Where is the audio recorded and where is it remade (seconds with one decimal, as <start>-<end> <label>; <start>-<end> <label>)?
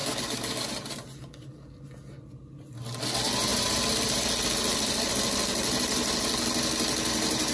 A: 0.0-0.7 remade; 0.7-7.5 recorded